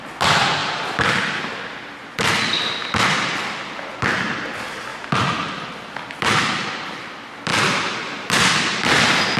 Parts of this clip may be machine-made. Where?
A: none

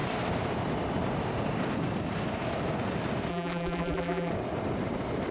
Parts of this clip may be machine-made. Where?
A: 3.3-4.3 (vocoder, BigVGAN v2)

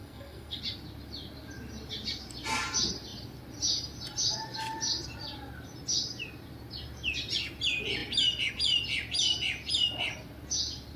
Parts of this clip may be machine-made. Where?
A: 0.0-0.6 (codec, SNAC)

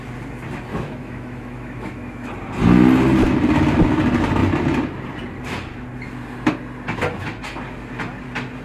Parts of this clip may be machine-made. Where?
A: 0.7-2.3 (autoencoder, DAC-VAE)

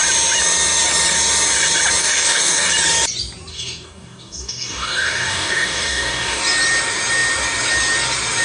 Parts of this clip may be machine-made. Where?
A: 2.0-2.7 (codec, DAC); 3.5-6.4

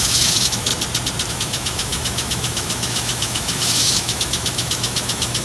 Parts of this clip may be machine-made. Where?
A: 0.0-0.7 (autoencoder, DAC-VAE); 1.3-5.4

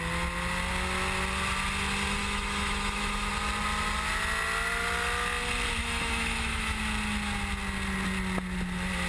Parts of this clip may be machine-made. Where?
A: 2.2-3.3 (autoencoder, DAC-VAE); 5.8-6.8